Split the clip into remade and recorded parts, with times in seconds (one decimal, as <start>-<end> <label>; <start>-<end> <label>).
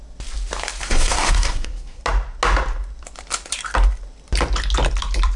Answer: 0.0-0.8 recorded; 0.8-2.0 remade; 2.0-5.4 recorded